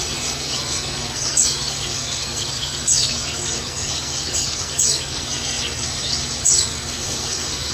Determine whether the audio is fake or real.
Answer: fake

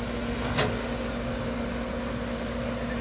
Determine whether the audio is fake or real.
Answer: real